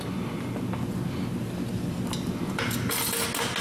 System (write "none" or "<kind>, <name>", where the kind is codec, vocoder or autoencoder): none